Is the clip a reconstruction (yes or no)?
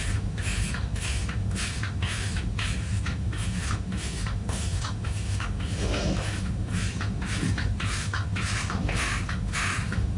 yes